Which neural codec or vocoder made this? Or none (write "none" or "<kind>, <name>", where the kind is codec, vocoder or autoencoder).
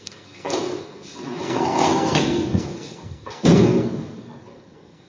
codec, SNAC